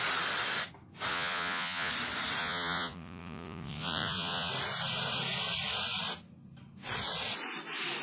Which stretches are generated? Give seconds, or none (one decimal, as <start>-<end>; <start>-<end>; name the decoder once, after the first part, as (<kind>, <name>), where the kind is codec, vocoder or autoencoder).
1.1-1.9 (vocoder, Vocos); 2.4-4.5